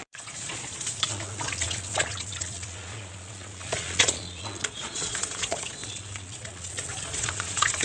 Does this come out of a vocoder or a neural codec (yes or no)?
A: yes